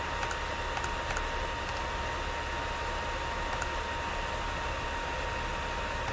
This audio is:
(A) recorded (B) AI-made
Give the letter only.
A